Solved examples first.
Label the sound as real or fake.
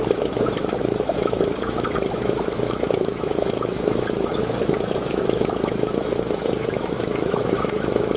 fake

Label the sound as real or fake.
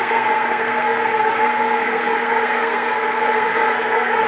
fake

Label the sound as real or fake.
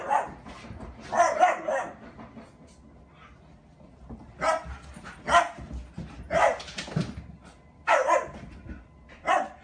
real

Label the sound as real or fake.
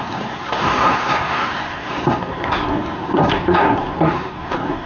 fake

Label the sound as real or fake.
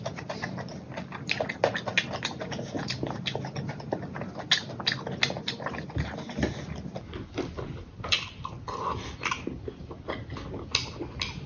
real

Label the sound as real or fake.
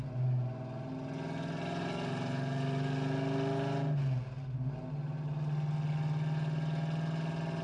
real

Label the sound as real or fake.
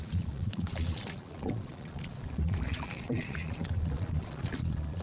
fake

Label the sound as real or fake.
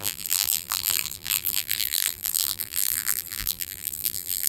fake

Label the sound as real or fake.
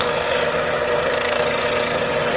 real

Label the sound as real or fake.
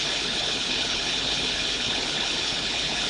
fake